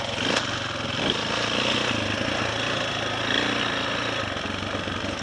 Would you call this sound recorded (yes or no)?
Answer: yes